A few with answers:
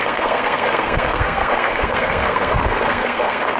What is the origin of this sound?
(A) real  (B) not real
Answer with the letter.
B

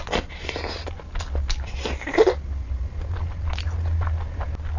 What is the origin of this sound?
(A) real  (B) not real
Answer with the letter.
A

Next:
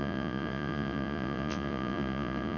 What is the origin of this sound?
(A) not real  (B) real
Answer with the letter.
A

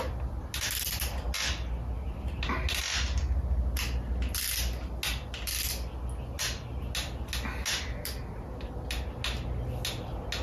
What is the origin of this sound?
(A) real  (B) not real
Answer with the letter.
A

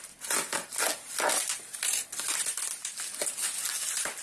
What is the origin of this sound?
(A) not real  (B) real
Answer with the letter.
B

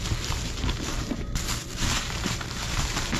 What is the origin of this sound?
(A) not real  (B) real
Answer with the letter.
A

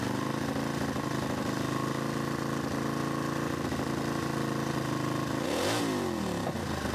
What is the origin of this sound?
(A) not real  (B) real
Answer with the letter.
B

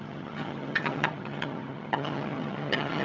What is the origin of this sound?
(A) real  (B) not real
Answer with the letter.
B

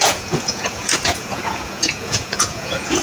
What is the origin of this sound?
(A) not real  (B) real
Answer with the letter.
A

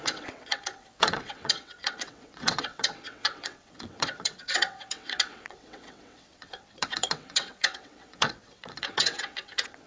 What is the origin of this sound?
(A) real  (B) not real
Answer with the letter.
B